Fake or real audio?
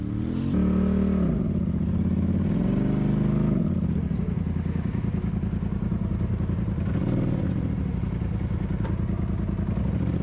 real